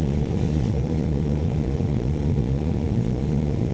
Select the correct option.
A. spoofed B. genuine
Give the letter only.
A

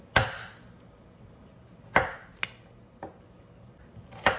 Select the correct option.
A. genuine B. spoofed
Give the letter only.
A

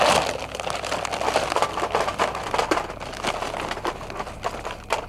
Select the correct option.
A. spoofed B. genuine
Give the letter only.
B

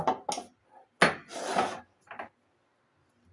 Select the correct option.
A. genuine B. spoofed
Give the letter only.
A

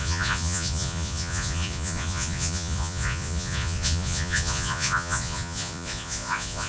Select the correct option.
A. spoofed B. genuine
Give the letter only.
A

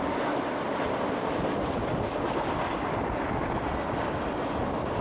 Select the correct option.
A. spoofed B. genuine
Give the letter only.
B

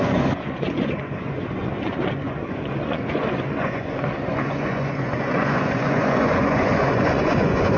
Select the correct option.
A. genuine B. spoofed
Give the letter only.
B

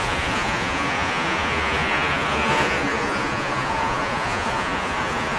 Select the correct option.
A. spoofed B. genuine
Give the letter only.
A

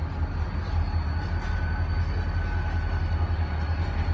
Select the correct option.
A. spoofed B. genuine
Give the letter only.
B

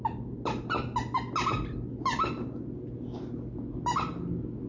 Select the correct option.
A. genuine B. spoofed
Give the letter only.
A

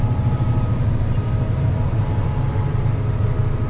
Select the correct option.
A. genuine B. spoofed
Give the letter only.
A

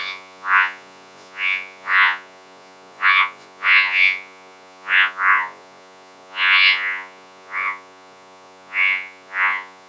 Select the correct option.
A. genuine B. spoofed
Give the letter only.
B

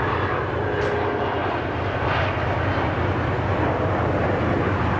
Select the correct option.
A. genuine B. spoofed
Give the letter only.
A